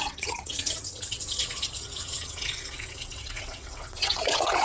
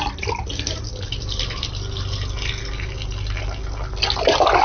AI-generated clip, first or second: first